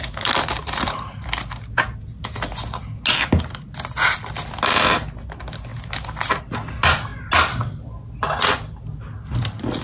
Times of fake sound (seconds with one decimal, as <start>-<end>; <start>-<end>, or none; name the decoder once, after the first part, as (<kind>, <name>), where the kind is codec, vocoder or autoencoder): none